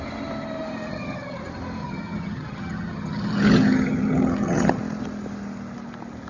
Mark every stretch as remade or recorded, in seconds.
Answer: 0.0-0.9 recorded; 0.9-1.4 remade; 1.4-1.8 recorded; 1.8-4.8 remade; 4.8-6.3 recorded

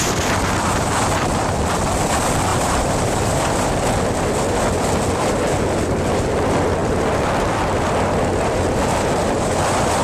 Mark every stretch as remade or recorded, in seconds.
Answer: 0.0-2.5 recorded; 2.5-3.7 remade; 3.7-10.0 recorded

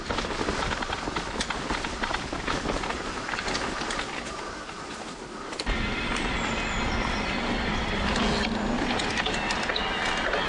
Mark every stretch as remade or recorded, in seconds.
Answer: 0.0-10.5 recorded

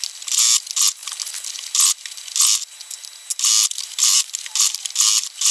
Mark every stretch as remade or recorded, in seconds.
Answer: 0.0-5.5 recorded

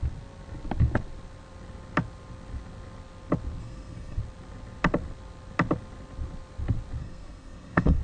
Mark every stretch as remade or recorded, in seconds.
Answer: 0.0-3.6 recorded; 3.6-4.2 remade; 4.2-7.0 recorded; 7.0-8.0 remade